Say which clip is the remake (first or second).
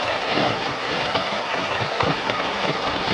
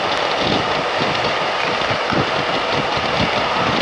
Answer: first